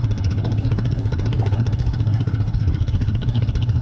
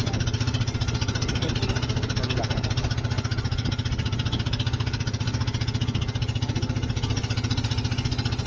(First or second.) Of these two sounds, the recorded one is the second